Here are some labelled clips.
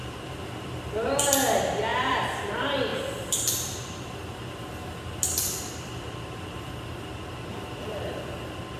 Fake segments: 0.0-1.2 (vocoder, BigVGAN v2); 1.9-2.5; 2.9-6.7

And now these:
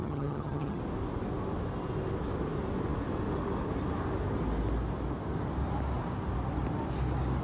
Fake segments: 0.0-0.8 (vocoder, HiFi-GAN)

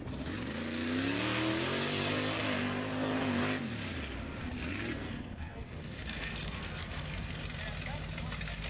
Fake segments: 4.9-7.4 (codec, SNAC)

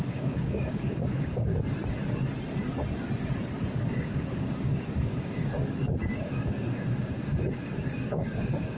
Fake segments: 0.0-1.5 (codec, DAC); 3.8-8.8

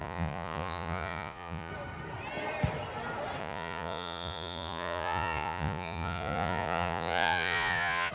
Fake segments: 0.0-1.7 (vocoder, Vocos); 3.4-8.1

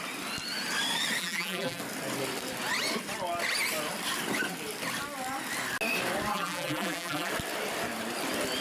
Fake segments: 1.2-1.8 (vocoder, BigVGAN v2); 6.3-7.3

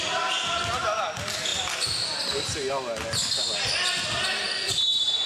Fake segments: none